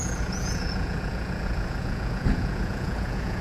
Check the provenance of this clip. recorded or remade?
remade